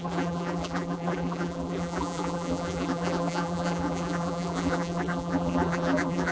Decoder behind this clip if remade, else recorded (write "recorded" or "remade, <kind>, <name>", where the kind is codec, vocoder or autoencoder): remade, vocoder, BigVGAN v2